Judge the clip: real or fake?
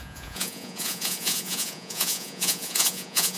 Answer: fake